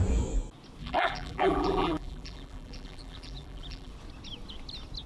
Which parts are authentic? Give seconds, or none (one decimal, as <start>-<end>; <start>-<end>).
0.0-0.8; 3.9-5.1